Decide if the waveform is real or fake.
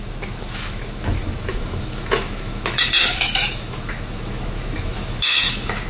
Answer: fake